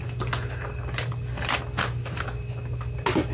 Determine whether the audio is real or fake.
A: real